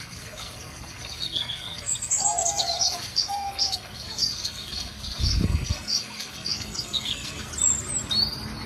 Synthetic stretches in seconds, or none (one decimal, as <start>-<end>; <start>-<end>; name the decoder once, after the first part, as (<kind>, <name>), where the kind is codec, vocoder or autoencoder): 0.0-7.5 (codec, SNAC)